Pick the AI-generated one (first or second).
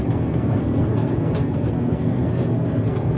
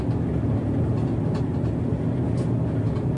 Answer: first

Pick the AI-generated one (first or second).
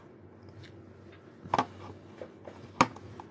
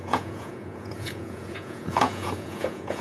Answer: second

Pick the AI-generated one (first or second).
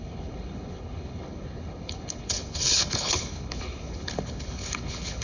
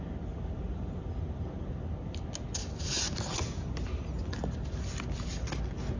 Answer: first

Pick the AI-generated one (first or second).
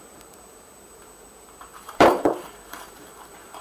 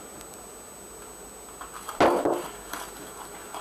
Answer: first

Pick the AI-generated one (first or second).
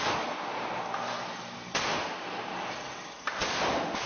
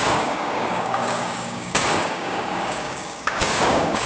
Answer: second